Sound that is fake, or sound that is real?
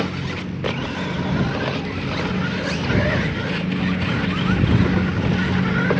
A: real